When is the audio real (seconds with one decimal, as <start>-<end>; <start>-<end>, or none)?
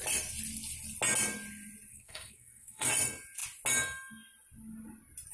0.0-1.9; 2.9-5.3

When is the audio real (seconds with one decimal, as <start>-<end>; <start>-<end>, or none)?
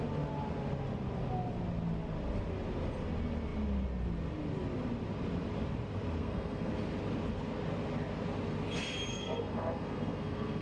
0.0-6.2; 6.7-9.1